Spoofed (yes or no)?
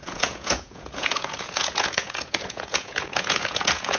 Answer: yes